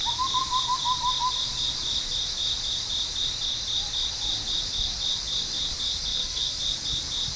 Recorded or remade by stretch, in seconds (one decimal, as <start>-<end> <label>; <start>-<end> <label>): 0.0-6.1 recorded; 6.1-6.6 remade; 6.6-7.4 recorded

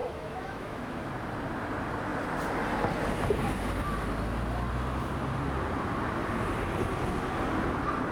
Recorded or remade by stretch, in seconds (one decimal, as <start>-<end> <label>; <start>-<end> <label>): 0.0-1.1 remade; 1.1-8.1 recorded

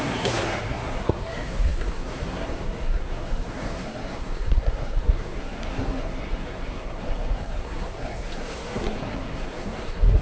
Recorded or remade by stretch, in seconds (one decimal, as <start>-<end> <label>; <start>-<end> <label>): 0.0-10.2 remade

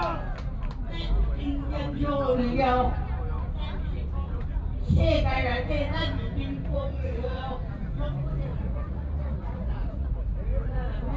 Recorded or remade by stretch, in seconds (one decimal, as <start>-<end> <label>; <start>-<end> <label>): 0.0-6.7 recorded; 6.7-7.4 remade; 7.4-8.5 recorded; 8.5-10.1 remade; 10.1-11.2 recorded

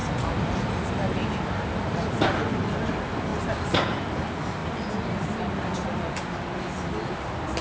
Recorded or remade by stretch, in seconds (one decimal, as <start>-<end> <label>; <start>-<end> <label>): 0.0-7.6 recorded